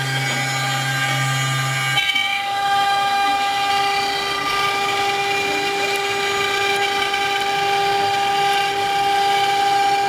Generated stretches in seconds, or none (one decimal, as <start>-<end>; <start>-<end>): 2.3-3.7